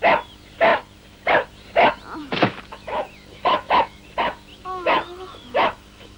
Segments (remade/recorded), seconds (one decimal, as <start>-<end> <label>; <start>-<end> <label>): 0.0-2.2 recorded; 2.2-4.0 remade; 4.0-4.5 recorded; 4.5-6.2 remade

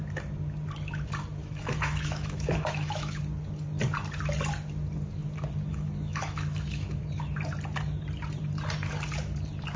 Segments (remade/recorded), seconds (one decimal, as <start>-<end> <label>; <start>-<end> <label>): 0.0-1.4 recorded; 1.4-3.2 remade; 3.2-5.7 recorded; 5.7-7.0 remade; 7.0-9.8 recorded

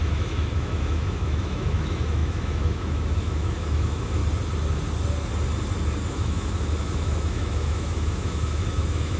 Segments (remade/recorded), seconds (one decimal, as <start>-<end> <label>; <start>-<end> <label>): 0.0-4.2 remade; 4.2-6.1 recorded; 6.1-9.2 remade

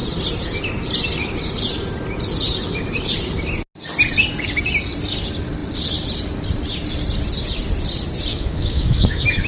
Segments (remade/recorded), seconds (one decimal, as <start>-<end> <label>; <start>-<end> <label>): 0.0-8.3 recorded; 8.3-9.5 remade